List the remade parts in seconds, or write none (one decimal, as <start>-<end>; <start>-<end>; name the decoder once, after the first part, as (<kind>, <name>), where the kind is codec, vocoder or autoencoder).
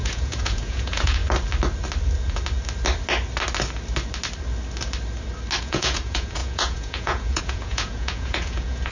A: 0.0-1.2 (vocoder, Vocos); 5.6-8.9